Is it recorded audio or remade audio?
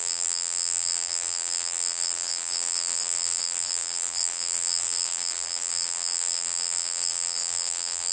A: remade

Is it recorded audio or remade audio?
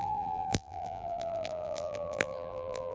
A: remade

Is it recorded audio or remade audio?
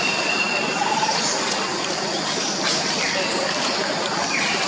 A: remade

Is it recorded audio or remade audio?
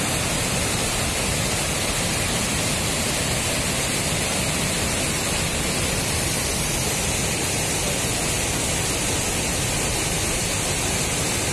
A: recorded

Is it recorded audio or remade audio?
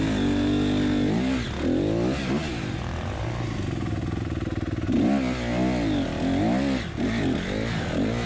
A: recorded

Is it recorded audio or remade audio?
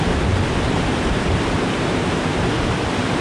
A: remade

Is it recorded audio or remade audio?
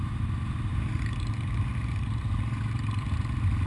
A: remade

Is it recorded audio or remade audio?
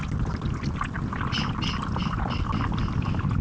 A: recorded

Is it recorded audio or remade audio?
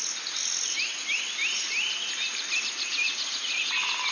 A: recorded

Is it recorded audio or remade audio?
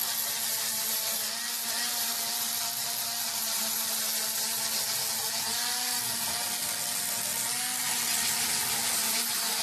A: recorded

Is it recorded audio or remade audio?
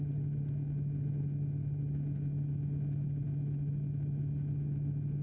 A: recorded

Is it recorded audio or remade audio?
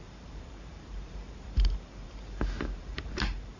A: remade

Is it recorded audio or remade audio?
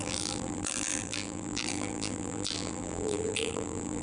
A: remade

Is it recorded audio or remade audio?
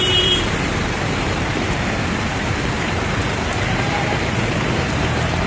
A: remade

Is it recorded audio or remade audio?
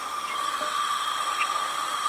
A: recorded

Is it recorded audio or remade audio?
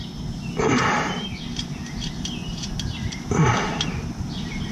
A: recorded